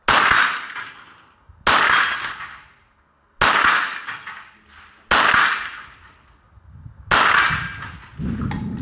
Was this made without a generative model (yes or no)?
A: yes